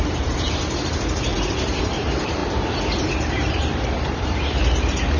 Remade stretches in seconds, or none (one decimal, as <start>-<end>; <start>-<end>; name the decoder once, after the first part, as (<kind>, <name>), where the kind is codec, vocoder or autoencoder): 0.0-2.4 (vocoder, BigVGAN v2); 3.3-5.2